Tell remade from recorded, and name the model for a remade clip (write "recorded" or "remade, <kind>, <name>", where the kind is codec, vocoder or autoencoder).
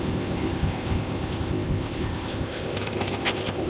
remade, codec, ZipCodec